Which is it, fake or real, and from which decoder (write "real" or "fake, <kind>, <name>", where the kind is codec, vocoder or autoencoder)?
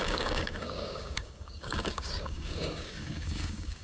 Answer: fake, codec, DAC